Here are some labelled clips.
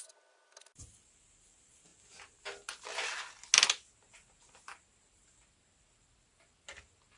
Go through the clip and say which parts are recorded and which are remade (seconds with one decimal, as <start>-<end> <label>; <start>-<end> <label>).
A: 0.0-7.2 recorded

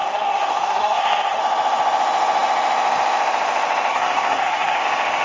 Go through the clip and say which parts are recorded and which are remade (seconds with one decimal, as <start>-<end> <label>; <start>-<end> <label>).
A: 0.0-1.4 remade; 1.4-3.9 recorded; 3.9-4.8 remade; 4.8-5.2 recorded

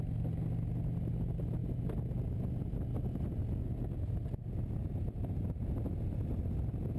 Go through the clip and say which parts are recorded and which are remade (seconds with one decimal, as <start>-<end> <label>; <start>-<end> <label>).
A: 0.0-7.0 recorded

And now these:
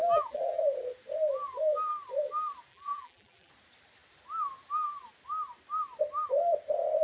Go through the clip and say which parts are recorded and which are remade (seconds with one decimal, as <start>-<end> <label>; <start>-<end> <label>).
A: 0.0-0.6 remade; 0.6-2.7 recorded; 2.7-3.5 remade; 3.5-7.0 recorded

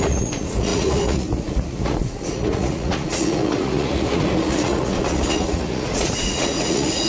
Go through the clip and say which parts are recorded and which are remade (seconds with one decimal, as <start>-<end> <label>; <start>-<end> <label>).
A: 0.0-7.1 remade

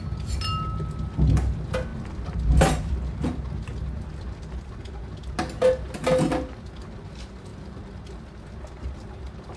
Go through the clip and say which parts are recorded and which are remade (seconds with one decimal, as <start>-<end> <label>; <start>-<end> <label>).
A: 0.0-9.6 recorded

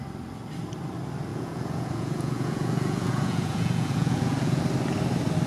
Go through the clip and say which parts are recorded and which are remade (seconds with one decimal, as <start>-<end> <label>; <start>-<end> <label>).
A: 0.0-1.3 recorded; 1.3-4.6 remade; 4.6-5.5 recorded